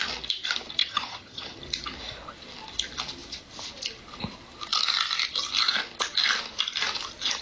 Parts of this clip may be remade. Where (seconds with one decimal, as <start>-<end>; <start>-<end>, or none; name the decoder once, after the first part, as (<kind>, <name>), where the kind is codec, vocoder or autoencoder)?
0.8-1.6 (vocoder, HiFi-GAN)